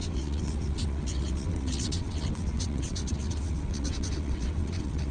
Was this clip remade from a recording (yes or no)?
yes